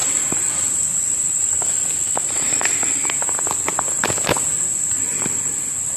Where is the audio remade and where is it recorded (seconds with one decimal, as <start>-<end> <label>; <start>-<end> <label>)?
0.0-1.8 remade; 1.8-6.0 recorded